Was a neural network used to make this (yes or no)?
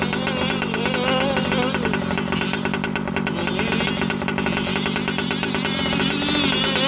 no